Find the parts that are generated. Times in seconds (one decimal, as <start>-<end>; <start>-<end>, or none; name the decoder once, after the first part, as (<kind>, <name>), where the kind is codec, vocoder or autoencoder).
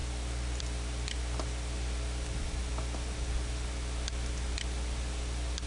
none